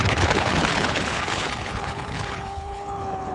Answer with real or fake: fake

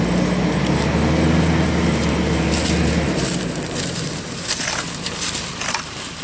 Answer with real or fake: real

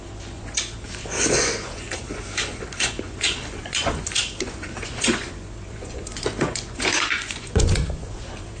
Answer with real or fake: fake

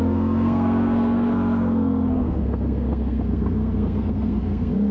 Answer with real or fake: fake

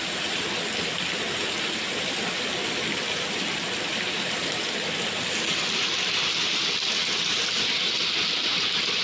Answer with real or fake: real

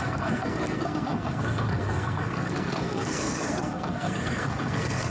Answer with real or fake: fake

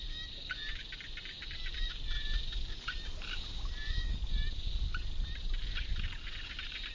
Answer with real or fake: real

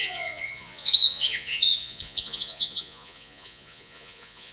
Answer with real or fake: fake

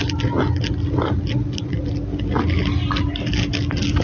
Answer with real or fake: real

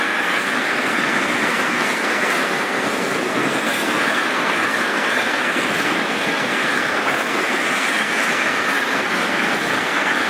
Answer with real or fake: fake